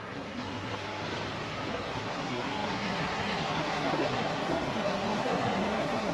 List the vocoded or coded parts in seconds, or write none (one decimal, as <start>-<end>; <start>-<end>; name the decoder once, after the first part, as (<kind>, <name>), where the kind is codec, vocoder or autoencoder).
0.0-1.0 (codec, SNAC); 1.7-6.1